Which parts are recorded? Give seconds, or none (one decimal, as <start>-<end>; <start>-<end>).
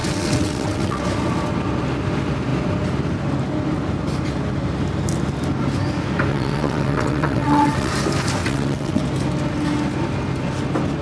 1.0-6.3; 7.9-8.4; 9.0-11.0